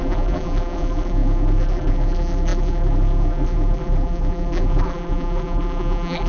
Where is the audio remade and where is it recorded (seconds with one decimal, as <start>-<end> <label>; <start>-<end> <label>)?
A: 0.0-6.3 remade